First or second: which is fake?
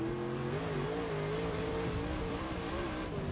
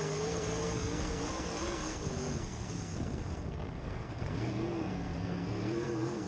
second